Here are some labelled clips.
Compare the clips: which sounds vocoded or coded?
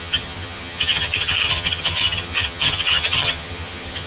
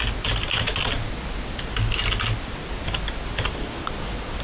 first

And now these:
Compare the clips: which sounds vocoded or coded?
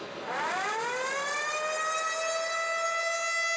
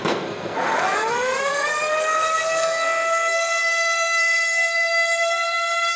second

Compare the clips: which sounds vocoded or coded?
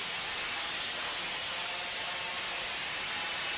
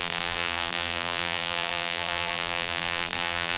second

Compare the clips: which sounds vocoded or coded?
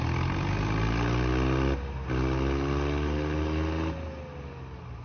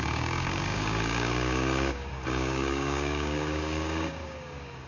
second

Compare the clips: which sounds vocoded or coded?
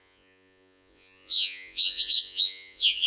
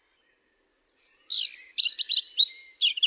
first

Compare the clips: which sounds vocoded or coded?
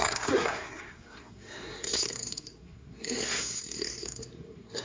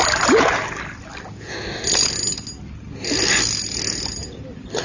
first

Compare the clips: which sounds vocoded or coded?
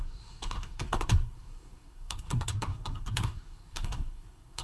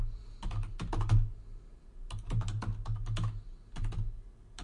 first